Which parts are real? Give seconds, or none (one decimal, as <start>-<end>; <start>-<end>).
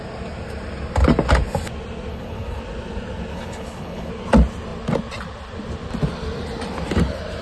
0.0-2.1; 2.6-3.3; 4.1-7.4